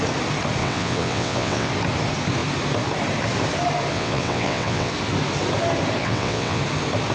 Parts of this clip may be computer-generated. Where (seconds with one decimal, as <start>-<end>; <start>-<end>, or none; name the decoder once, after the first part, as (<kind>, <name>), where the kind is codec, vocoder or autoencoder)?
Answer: 0.6-1.7 (vocoder, WaveNeXt); 3.9-4.9; 6.0-6.6